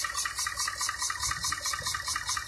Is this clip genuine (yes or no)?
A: yes